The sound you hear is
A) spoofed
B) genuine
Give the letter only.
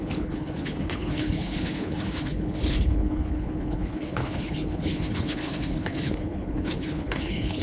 A